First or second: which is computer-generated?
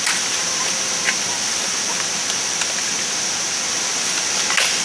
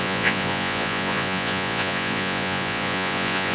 second